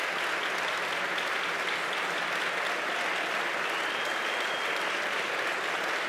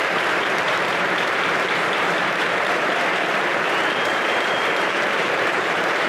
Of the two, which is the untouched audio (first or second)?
first